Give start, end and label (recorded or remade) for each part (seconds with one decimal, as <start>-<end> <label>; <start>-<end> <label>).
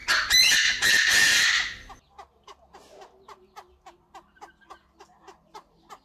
0.0-6.0 recorded